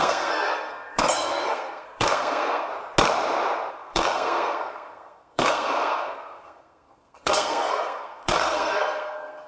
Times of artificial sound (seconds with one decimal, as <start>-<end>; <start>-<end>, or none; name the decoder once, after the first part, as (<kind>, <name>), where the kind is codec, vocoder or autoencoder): 0.0-2.7 (codec, SNAC); 3.7-9.5